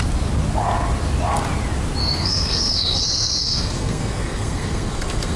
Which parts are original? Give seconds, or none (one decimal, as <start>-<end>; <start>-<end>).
0.0-2.0